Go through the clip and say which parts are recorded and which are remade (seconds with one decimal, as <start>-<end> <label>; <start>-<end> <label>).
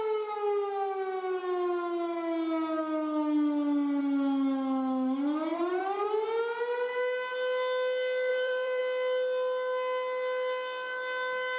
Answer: 0.0-5.5 recorded; 5.5-6.1 remade; 6.1-8.3 recorded; 8.3-8.8 remade; 8.8-11.6 recorded